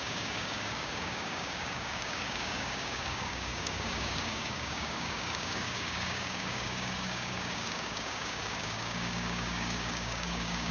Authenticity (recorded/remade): remade